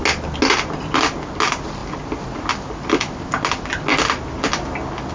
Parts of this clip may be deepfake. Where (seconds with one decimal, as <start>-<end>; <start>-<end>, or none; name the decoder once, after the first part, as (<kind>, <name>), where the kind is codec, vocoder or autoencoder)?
none